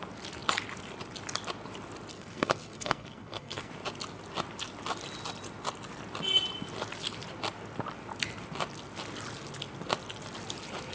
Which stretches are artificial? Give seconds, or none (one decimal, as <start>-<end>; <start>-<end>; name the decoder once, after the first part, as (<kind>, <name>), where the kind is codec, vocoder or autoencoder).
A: 2.1-3.7 (codec, SNAC)